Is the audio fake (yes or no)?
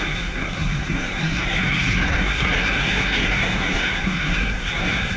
yes